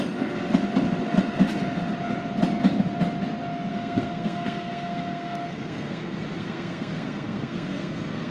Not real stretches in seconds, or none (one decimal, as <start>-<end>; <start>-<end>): 3.7-8.3